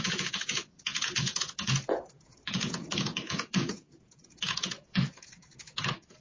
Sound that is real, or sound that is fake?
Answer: fake